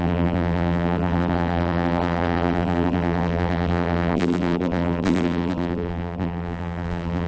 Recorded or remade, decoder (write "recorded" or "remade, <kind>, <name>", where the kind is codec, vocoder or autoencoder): remade, vocoder, BigVGAN v2